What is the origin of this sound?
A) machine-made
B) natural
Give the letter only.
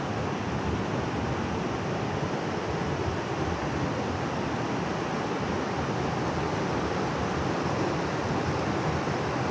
B